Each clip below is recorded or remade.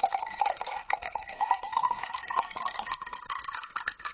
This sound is remade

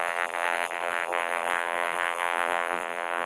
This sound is remade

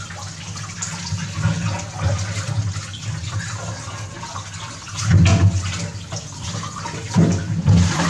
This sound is recorded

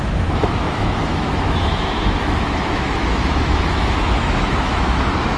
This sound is remade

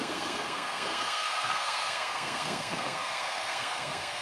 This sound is remade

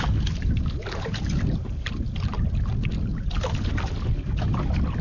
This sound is recorded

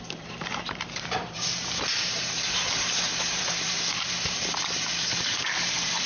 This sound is remade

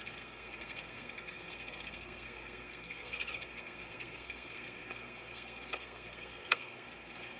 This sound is remade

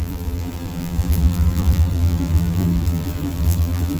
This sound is remade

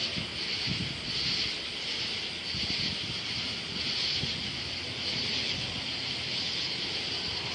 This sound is recorded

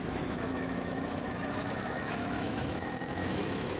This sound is remade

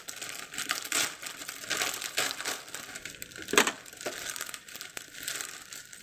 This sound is remade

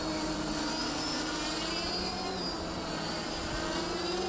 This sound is recorded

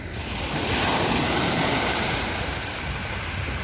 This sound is recorded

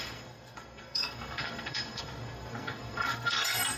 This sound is remade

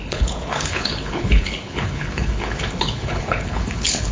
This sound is remade